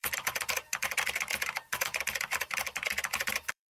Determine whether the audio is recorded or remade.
remade